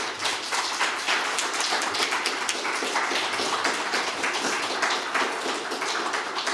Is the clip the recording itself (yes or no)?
yes